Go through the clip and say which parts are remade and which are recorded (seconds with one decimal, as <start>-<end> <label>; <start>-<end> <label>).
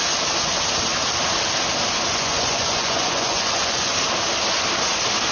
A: 0.0-2.1 recorded; 2.1-3.9 remade; 3.9-5.3 recorded